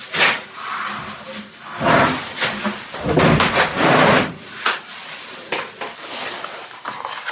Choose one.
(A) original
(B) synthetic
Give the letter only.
A